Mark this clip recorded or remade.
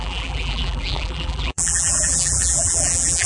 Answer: remade